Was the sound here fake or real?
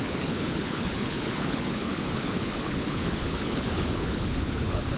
fake